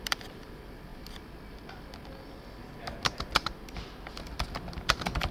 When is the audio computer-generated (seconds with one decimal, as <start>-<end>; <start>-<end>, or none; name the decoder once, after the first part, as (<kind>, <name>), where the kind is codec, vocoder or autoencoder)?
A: 0.0-0.9 (vocoder, BigVGAN v2); 4.1-5.3